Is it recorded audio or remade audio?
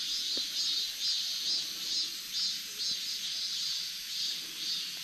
recorded